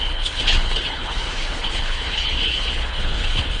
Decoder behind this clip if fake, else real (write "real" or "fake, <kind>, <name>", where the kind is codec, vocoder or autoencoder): fake, codec, HILCodec